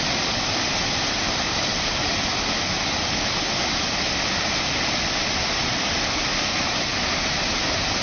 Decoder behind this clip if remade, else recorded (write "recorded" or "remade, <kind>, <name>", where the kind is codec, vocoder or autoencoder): recorded